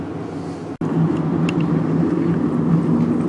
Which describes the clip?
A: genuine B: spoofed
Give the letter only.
A